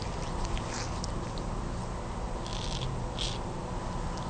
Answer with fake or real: real